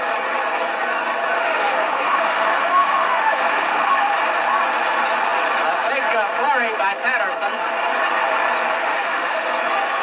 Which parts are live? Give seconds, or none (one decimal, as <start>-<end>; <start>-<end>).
0.0-1.4; 4.1-8.8; 9.5-10.0

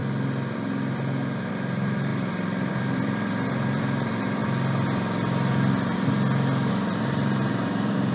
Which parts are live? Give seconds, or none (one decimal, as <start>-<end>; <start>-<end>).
0.0-1.5; 4.4-6.7

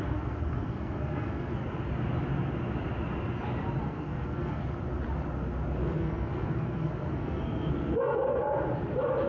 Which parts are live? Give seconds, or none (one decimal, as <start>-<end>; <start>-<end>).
1.6-3.8; 4.6-5.8; 8.4-9.3